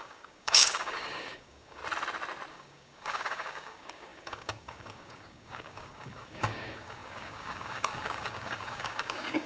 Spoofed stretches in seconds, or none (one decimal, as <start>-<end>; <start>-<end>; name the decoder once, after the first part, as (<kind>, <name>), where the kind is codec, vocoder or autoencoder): 0.0-1.8 (codec, DAC); 2.5-9.5